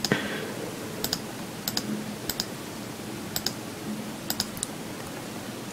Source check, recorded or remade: recorded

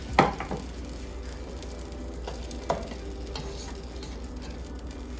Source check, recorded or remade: recorded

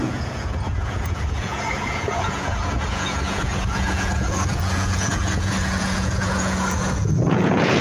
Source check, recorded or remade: remade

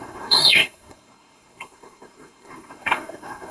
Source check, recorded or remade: remade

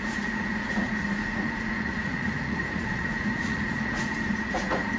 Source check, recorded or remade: remade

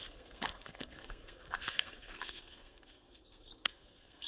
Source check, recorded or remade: remade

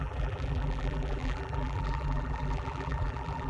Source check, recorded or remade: remade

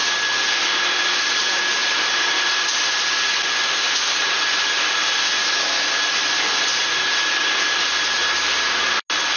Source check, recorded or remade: recorded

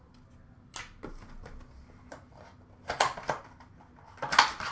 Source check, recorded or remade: recorded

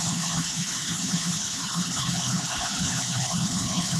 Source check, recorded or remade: remade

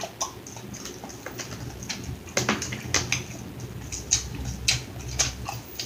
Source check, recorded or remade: recorded